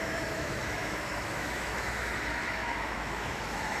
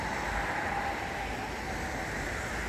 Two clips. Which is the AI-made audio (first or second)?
first